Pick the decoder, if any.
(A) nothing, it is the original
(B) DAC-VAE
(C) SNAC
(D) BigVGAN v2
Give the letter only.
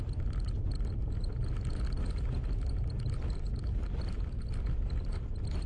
A